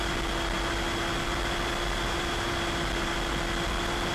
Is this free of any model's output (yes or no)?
yes